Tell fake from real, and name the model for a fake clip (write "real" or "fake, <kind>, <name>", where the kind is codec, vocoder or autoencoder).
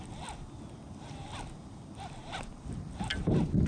real